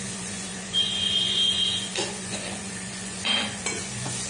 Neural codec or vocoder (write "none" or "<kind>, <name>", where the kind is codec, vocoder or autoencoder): vocoder, Vocos